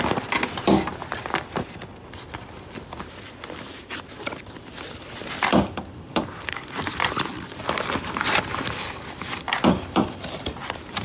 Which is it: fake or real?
fake